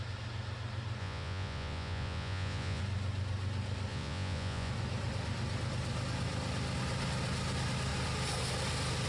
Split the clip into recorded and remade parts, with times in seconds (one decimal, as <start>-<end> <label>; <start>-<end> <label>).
0.0-1.0 recorded; 1.0-2.8 remade; 2.8-3.9 recorded; 3.9-4.7 remade; 4.7-9.1 recorded

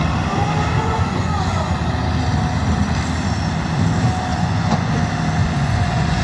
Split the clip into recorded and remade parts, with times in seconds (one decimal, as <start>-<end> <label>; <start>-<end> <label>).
0.0-0.8 recorded; 0.8-1.8 remade; 1.8-4.3 recorded; 4.3-4.9 remade; 4.9-5.4 recorded; 5.4-6.2 remade

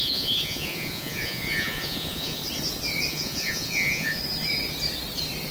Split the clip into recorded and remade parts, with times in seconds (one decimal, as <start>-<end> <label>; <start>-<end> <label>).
0.0-2.4 remade; 2.4-3.1 recorded; 3.1-4.2 remade; 4.2-5.5 recorded